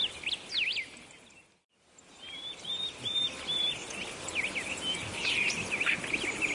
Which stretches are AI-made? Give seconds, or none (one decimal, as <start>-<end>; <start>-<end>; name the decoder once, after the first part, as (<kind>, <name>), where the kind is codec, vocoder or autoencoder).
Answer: none